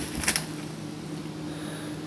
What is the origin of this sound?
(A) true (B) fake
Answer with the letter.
A